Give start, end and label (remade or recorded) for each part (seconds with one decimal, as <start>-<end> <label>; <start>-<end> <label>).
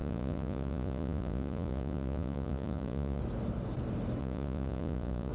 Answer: 0.0-3.2 remade; 3.2-4.2 recorded; 4.2-5.3 remade